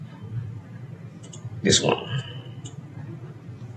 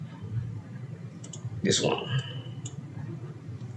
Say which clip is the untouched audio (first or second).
first